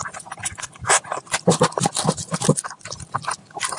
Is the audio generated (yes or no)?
no